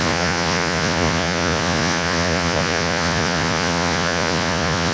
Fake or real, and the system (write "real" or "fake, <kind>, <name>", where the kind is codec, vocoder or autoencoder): fake, vocoder, Vocos